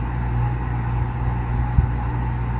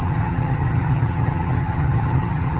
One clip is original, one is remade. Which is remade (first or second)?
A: second